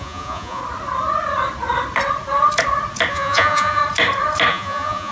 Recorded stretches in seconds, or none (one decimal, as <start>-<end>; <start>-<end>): 0.6-3.1; 3.8-4.5